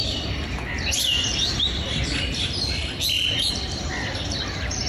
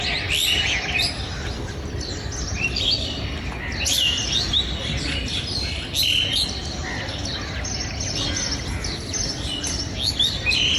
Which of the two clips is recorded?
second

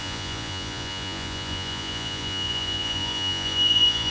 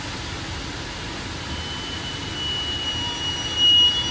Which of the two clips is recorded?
second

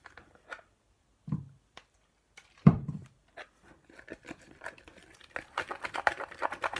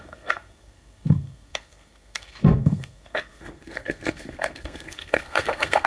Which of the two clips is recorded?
first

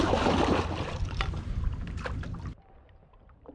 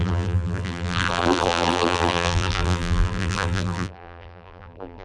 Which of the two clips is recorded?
first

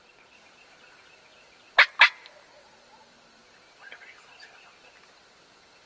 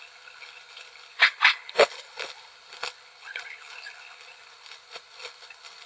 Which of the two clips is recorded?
first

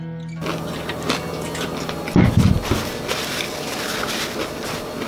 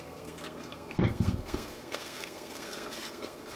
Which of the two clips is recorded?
first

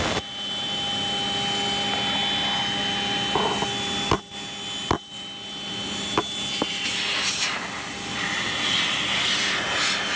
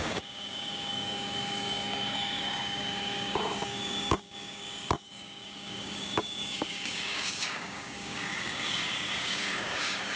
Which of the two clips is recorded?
first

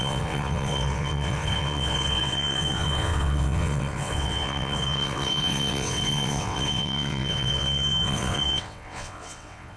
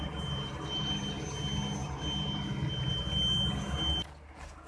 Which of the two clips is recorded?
second